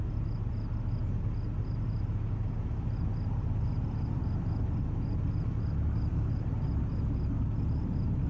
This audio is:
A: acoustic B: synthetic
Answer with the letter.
A